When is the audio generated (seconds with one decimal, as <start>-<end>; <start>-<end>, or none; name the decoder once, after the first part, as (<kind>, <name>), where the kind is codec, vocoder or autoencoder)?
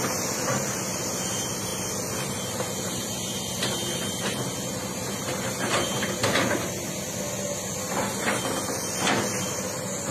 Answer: none